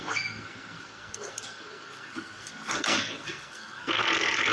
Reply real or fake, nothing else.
fake